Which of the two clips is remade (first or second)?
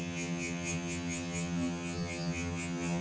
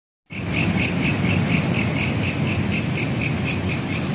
first